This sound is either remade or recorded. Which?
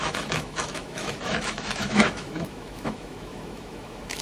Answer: remade